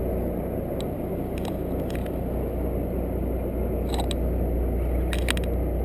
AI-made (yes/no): no